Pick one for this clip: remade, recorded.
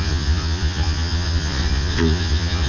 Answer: remade